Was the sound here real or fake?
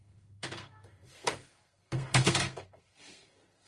fake